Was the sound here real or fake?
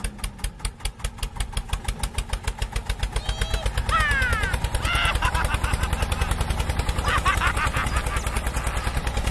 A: real